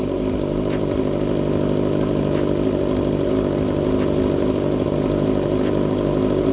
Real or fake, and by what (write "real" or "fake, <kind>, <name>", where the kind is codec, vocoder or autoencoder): real